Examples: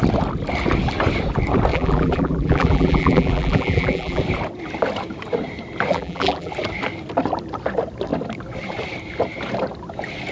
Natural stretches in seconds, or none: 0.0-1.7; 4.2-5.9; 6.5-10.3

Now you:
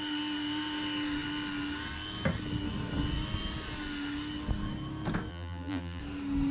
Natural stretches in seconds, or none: 0.0-5.3; 6.0-6.5

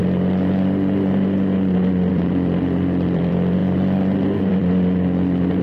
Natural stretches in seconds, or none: 0.0-2.1; 3.6-4.4

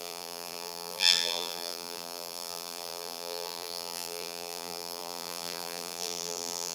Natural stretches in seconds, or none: none

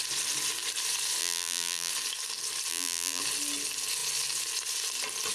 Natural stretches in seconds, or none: 0.0-1.2; 1.9-2.7; 3.2-5.3

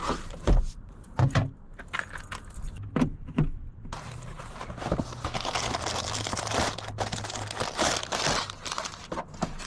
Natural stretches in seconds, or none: 1.8-3.1; 4.7-9.7

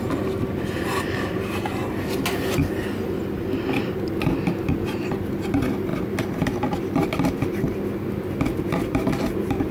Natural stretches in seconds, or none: 0.0-9.7